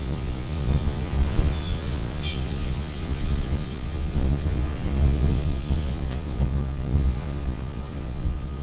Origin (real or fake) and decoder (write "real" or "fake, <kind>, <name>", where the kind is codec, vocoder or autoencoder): fake, vocoder, Vocos